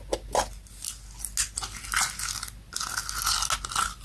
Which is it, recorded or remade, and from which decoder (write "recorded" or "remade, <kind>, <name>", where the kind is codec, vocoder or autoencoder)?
recorded